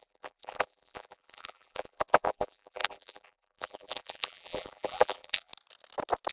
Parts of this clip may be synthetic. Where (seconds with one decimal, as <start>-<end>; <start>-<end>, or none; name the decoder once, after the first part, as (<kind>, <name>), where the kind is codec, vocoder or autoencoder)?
0.0-5.5 (vocoder, BigVGAN v2)

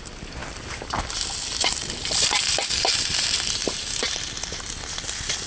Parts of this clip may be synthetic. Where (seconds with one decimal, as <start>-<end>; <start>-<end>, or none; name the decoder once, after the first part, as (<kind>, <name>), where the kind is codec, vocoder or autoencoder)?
3.6-4.3 (vocoder, BigVGAN v2)